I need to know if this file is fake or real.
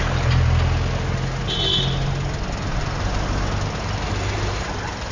real